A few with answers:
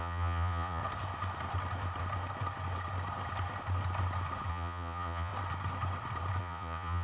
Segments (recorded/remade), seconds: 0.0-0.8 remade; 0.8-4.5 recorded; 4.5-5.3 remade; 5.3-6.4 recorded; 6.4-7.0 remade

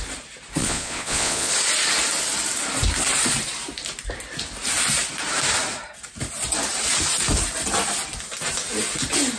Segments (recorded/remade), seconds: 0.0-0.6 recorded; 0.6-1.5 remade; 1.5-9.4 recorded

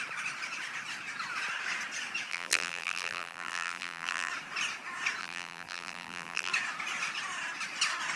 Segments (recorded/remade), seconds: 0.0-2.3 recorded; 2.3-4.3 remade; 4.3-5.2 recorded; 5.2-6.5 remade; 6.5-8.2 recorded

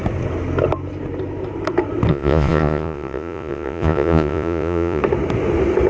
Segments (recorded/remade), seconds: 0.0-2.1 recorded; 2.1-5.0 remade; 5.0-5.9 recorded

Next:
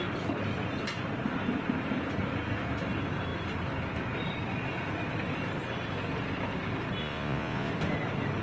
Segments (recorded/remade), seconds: 0.0-7.0 recorded; 7.0-7.7 remade; 7.7-8.4 recorded

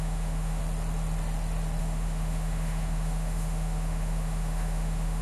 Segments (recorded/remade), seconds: 0.0-0.6 remade; 0.6-1.8 recorded; 1.8-5.2 remade

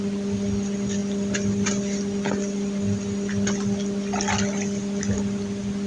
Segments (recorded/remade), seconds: 0.0-5.9 recorded

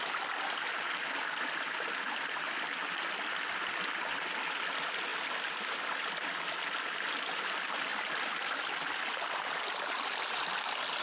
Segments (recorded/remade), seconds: 0.0-11.0 recorded